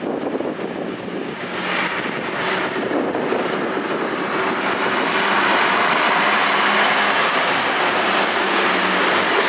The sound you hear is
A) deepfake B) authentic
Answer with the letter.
B